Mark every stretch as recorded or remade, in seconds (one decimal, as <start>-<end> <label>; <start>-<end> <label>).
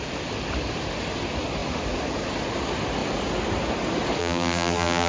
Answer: 0.0-4.2 recorded; 4.2-5.1 remade